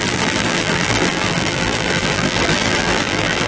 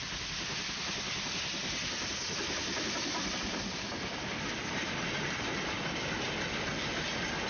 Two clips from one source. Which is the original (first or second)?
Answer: second